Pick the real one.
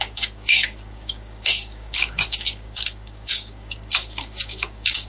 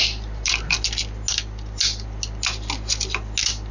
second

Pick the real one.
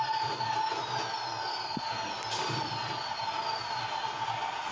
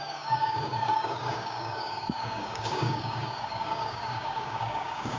first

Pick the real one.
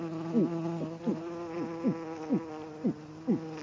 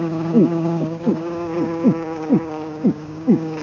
first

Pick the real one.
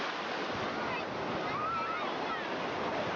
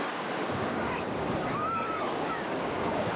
first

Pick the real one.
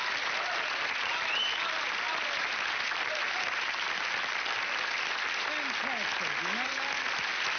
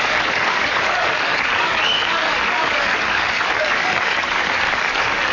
first